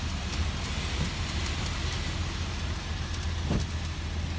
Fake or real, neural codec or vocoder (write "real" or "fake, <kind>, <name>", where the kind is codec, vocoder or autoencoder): real